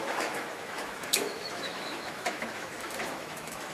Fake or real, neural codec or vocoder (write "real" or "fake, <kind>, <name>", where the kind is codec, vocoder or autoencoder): fake, autoencoder, DAC-VAE